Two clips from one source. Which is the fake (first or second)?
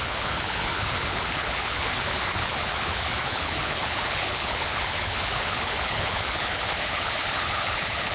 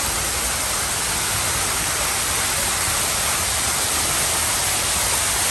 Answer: first